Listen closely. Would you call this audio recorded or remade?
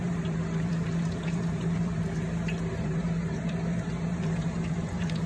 remade